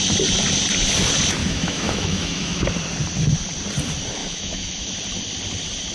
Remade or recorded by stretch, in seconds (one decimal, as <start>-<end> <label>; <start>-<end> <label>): 0.0-1.4 recorded; 1.4-2.6 remade; 2.6-4.2 recorded; 4.2-4.9 remade; 4.9-5.9 recorded